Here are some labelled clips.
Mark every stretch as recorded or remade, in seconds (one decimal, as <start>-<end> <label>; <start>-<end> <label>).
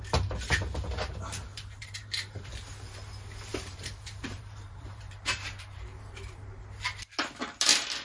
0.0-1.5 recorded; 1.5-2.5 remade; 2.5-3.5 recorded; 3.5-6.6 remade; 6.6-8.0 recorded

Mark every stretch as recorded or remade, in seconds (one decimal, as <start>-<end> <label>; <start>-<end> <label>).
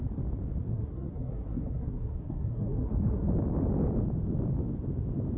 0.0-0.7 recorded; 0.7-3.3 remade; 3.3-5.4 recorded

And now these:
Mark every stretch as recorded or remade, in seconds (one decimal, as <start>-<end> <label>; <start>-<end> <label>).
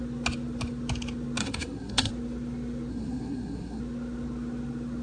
0.0-1.4 recorded; 1.4-2.1 remade; 2.1-2.9 recorded; 2.9-3.8 remade; 3.8-5.0 recorded